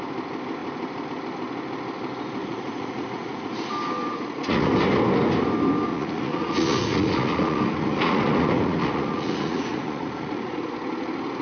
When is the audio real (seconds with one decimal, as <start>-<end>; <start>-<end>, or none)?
0.0-2.4; 3.5-4.1; 4.7-5.9; 10.7-11.4

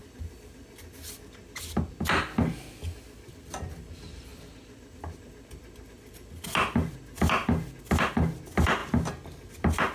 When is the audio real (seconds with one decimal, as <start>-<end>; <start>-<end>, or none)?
0.0-9.9

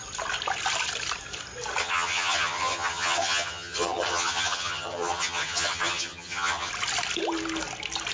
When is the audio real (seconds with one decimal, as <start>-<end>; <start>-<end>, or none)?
0.0-1.8; 6.7-8.1

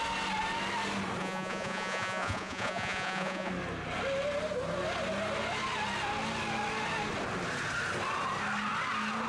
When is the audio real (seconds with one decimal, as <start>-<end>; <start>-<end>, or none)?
0.0-1.2; 3.5-9.3

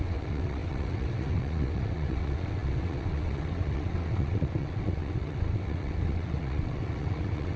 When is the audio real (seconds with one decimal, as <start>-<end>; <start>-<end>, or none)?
none

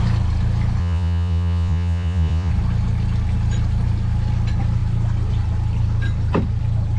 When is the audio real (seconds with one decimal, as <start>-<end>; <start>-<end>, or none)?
0.0-0.8; 2.5-7.0

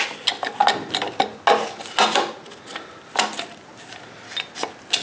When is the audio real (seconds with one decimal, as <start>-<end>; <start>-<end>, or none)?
0.0-5.0